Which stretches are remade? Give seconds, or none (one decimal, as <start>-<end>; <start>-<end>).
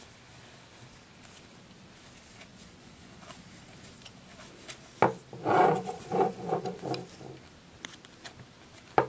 2.5-3.5; 5.4-6.6